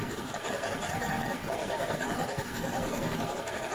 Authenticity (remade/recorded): remade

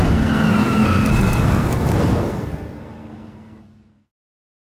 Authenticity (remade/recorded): remade